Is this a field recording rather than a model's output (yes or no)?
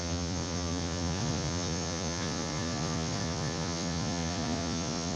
no